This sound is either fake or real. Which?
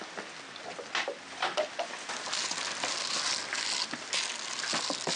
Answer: real